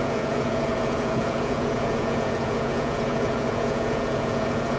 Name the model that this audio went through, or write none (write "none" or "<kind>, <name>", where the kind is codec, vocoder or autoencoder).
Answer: vocoder, Vocos